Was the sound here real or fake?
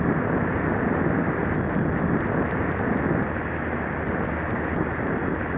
real